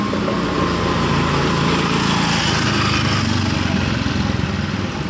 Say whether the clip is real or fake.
real